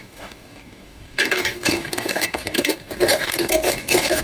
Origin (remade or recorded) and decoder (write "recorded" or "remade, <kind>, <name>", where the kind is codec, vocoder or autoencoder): remade, codec, DAC